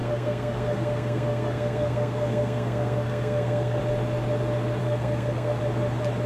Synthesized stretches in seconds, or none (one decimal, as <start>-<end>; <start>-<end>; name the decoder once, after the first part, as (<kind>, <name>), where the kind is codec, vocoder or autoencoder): 0.0-3.8 (codec, SNAC); 4.8-5.6